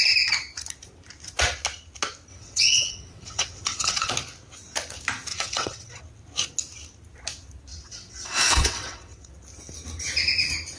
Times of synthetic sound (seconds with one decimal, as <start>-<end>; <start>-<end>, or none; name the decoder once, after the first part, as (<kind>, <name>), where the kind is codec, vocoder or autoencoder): 2.3-4.1 (vocoder, WaveNeXt); 5.3-6.0; 7.7-9.3